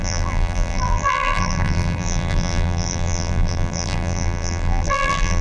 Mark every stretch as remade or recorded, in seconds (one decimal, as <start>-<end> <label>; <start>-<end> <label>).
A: 0.0-5.4 remade